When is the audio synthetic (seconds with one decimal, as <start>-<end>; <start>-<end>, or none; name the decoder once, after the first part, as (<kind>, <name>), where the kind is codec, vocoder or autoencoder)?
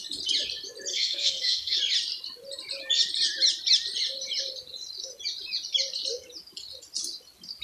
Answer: 0.9-1.8 (codec, SNAC)